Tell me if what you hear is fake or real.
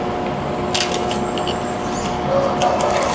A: real